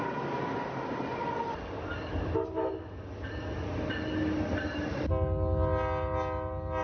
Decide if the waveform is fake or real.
real